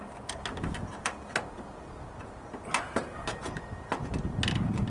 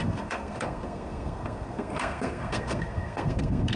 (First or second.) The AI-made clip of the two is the second